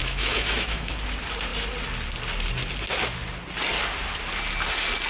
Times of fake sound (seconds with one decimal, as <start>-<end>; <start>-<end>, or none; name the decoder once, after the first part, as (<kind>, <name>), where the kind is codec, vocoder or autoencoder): 0.0-0.9 (autoencoder, DAC-VAE)